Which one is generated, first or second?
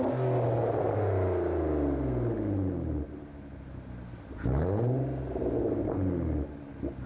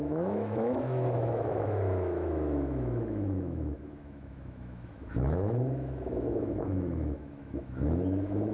second